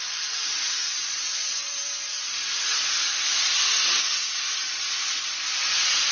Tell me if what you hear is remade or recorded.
recorded